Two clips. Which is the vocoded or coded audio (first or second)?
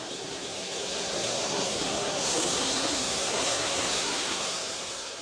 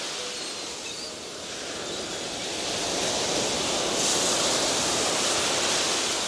first